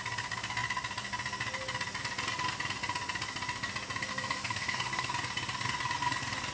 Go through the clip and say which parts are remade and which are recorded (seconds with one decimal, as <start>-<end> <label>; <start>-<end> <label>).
0.0-4.1 recorded; 4.1-5.1 remade; 5.1-6.5 recorded